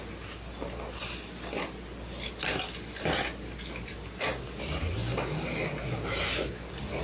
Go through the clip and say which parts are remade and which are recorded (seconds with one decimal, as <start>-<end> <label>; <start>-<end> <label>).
0.0-7.0 recorded